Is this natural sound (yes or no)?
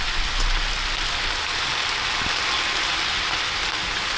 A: yes